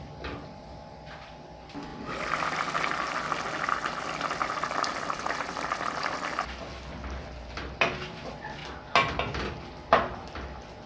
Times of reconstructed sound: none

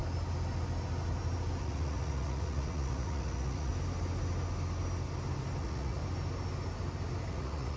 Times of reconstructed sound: 1.6-3.7 (vocoder, Vocos); 5.6-6.0; 7.3-7.8